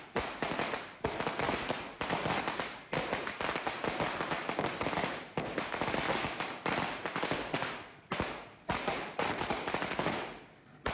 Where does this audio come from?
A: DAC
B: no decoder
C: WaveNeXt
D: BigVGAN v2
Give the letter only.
B